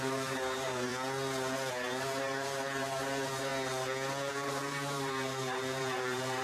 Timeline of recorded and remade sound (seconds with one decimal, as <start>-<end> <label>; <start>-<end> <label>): 0.0-0.9 remade; 0.9-1.7 recorded; 1.7-3.5 remade; 3.5-4.3 recorded; 4.3-6.4 remade